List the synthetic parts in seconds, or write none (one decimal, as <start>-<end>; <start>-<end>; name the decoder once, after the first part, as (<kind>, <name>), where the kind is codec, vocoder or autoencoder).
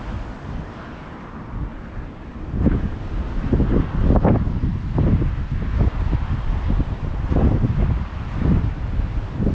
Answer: none